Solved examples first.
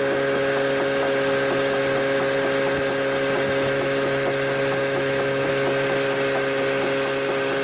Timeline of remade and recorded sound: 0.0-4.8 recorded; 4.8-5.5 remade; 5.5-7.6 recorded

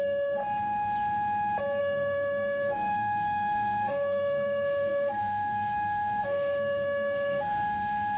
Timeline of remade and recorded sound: 0.0-0.4 remade; 0.4-1.8 recorded; 1.8-8.2 remade

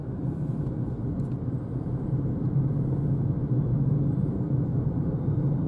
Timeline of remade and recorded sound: 0.0-4.7 recorded; 4.7-5.7 remade

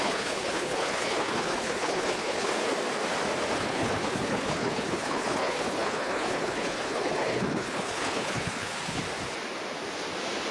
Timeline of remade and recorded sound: 0.0-2.5 remade; 2.5-3.5 recorded; 3.5-9.0 remade; 9.0-10.5 recorded

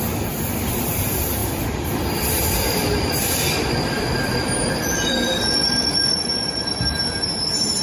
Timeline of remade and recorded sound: 0.0-7.8 remade